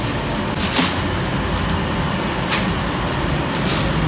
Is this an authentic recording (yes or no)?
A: yes